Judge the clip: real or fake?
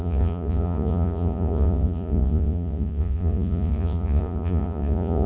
fake